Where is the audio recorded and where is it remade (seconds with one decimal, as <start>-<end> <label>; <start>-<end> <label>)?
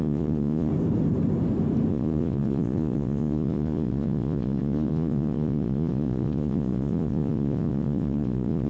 0.0-0.7 remade; 0.7-1.9 recorded; 1.9-8.7 remade